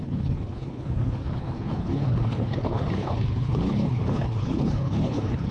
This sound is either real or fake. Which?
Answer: fake